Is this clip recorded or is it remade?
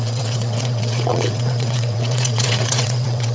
remade